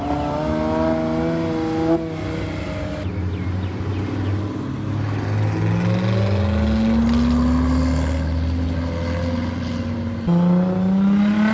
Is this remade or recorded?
recorded